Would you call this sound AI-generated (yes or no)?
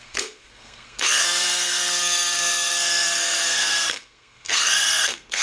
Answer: yes